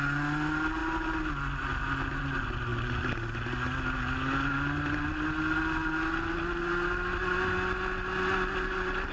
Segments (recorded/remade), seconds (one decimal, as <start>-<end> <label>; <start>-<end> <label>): 0.0-9.1 recorded

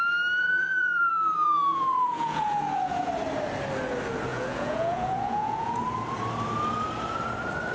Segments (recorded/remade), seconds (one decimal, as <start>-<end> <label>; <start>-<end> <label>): 0.0-0.4 recorded; 0.4-3.1 remade; 3.1-4.3 recorded; 4.3-5.8 remade; 5.8-7.7 recorded

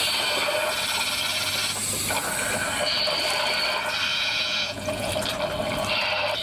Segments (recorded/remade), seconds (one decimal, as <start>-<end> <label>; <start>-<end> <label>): 0.0-4.1 recorded; 4.1-5.1 remade; 5.1-6.4 recorded

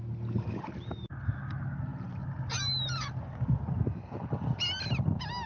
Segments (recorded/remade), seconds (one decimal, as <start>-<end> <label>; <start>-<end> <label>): 0.0-5.5 recorded